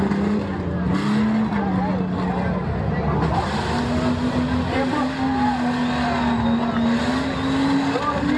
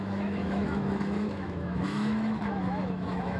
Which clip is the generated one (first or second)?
second